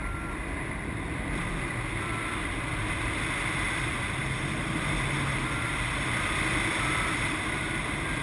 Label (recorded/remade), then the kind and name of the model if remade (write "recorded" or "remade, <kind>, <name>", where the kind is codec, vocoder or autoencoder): recorded